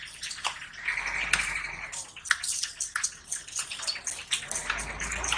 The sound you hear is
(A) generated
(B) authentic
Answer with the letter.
B